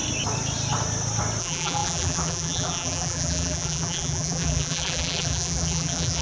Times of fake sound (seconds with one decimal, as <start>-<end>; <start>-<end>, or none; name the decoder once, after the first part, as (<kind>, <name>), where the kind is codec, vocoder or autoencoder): 1.4-6.2 (vocoder, BigVGAN v2)